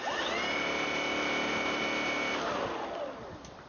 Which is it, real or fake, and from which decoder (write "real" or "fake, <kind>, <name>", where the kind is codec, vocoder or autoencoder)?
real